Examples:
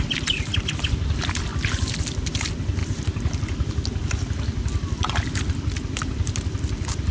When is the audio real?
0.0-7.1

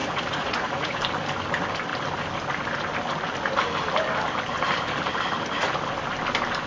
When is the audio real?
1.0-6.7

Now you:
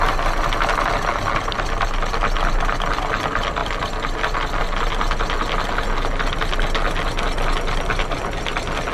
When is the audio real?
0.0-8.9

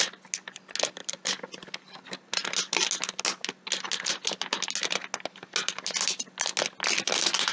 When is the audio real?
0.0-7.5

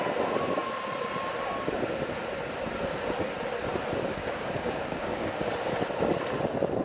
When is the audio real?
0.0-4.2; 5.5-6.8